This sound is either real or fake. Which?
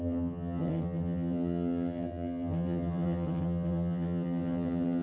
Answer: fake